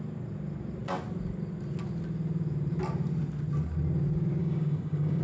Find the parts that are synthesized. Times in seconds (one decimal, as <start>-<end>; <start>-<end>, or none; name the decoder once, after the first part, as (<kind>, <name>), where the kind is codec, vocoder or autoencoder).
4.4-5.2 (codec, DAC)

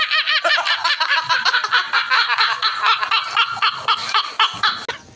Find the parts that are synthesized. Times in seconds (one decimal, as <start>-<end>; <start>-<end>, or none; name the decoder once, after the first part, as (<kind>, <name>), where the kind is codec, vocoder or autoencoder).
none